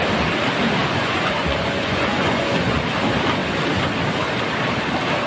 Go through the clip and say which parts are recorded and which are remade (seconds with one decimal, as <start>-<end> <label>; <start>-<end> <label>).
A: 0.0-0.8 recorded; 0.8-2.8 remade; 2.8-5.3 recorded